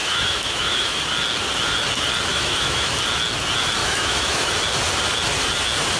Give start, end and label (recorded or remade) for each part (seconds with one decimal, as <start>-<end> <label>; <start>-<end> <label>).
0.0-1.0 remade; 1.0-2.3 recorded; 2.3-2.9 remade; 2.9-3.8 recorded; 3.8-4.5 remade; 4.5-6.0 recorded